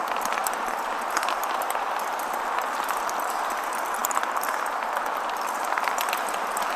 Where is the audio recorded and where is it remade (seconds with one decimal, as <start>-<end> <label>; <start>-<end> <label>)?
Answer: 0.0-6.8 recorded